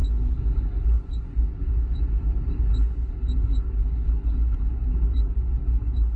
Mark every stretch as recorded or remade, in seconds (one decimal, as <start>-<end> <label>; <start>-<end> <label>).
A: 0.0-6.2 recorded